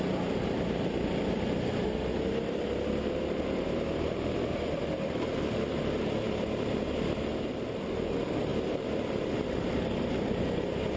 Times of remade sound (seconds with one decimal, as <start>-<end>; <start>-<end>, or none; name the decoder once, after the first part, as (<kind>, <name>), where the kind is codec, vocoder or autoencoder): none